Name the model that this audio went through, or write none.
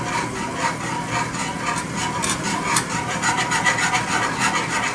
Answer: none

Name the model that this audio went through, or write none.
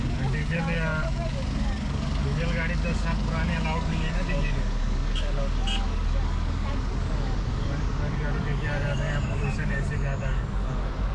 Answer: codec, DAC